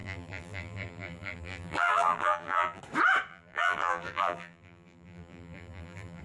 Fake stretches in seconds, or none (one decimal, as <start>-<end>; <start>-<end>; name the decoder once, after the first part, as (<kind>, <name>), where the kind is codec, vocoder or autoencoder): 0.0-2.8 (vocoder, BigVGAN v2); 3.3-6.2